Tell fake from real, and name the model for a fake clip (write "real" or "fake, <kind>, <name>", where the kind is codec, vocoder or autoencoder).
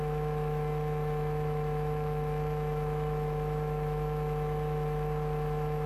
fake, autoencoder, DAC-VAE